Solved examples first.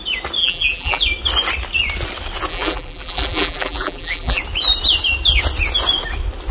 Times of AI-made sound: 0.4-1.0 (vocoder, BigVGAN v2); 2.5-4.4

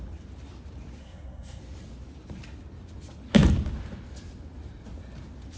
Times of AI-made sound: 1.0-1.6 (codec, SNAC)

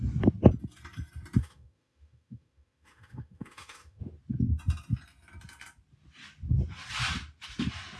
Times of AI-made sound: 1.4-4.0 (autoencoder, DAC-VAE)

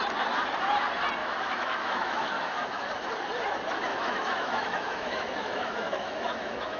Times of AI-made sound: 1.2-3.1 (autoencoder, DAC-VAE); 3.9-6.8

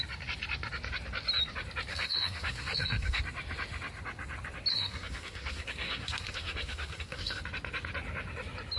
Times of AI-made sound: 1.9-3.2 (codec, SNAC); 4.7-7.4

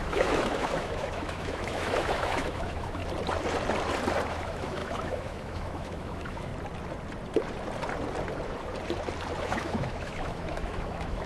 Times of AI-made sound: 0.0-3.0 (autoencoder, DAC-VAE); 4.3-6.5; 9.4-11.3